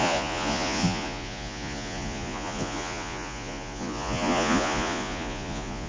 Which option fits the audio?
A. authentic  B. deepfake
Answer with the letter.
B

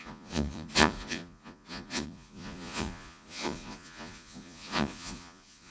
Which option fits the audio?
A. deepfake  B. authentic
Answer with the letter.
A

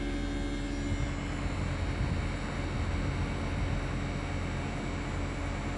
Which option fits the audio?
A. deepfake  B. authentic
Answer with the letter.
B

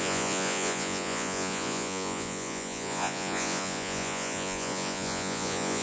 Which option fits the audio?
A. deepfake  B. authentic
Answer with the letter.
A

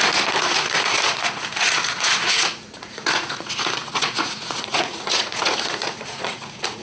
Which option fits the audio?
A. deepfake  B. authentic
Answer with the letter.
A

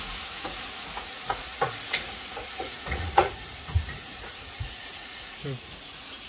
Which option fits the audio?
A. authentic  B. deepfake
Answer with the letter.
B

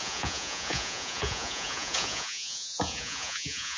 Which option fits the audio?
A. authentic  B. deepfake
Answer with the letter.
B